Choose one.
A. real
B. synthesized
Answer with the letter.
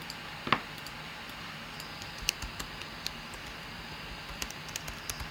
A